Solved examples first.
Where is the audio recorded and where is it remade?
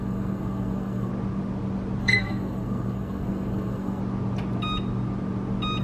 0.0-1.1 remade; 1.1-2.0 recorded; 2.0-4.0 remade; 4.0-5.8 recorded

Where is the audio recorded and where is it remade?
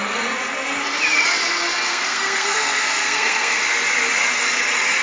0.0-1.9 recorded; 1.9-3.6 remade; 3.6-5.0 recorded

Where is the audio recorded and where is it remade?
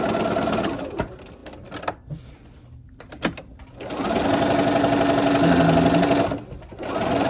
0.0-7.3 recorded